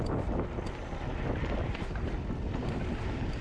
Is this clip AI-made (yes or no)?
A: no